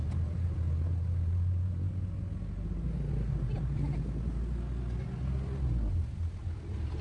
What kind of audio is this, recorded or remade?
recorded